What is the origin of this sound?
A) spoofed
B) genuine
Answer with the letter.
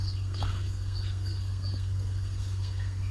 A